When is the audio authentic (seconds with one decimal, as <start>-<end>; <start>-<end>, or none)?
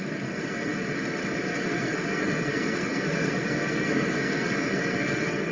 0.7-1.5